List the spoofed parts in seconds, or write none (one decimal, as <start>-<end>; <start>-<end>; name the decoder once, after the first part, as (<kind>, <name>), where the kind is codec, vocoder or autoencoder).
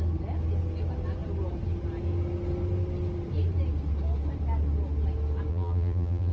5.5-6.3 (vocoder, BigVGAN v2)